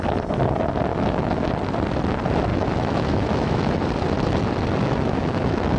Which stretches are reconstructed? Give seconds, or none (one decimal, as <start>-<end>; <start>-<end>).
0.9-1.4; 2.5-3.7; 4.8-5.8